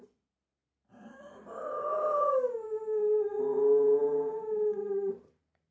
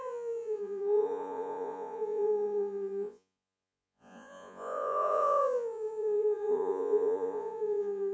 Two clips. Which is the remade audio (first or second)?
second